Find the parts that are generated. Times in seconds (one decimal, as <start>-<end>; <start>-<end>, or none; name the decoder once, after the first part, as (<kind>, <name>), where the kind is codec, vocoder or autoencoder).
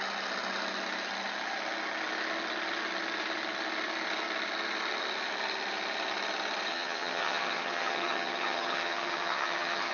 6.7-9.9 (vocoder, HiFi-GAN)